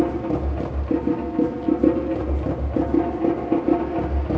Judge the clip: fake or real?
real